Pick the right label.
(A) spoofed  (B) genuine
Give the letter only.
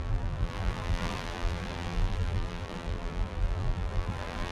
A